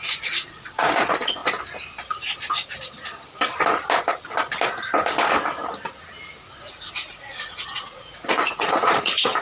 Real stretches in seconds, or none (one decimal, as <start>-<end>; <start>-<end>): 1.4-6.6